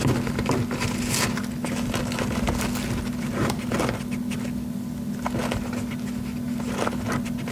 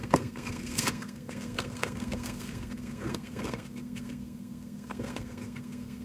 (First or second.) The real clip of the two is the first